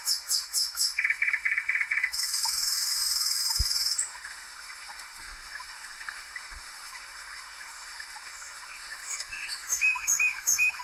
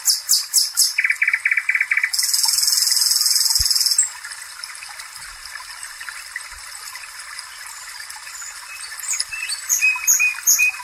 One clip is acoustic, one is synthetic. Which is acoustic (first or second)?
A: second